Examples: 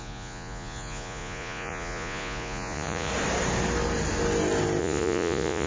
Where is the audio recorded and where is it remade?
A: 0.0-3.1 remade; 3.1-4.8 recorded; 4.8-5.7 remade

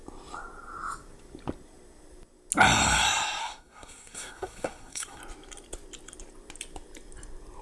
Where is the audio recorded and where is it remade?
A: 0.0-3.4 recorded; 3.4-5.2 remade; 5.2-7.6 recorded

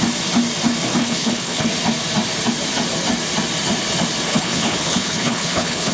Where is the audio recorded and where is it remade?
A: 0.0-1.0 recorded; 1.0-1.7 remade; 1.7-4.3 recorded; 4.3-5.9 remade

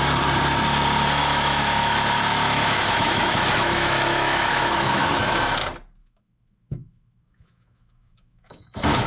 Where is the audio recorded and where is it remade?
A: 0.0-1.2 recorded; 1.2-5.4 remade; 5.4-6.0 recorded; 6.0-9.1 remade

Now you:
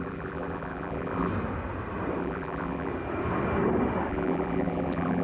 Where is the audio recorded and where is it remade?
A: 0.0-1.3 remade; 1.3-2.2 recorded; 2.2-2.9 remade; 2.9-4.1 recorded; 4.1-5.2 remade